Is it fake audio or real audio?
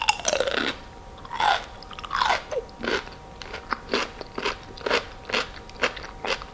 real